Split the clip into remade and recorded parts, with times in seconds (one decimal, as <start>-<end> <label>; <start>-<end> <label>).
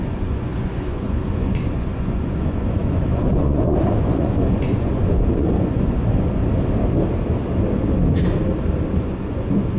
0.0-6.4 remade; 6.4-9.0 recorded; 9.0-9.8 remade